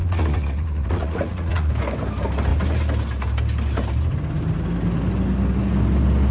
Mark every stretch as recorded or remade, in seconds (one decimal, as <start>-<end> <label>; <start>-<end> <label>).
0.0-1.7 remade; 1.7-6.3 recorded